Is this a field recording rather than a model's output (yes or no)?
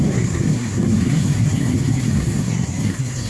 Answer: no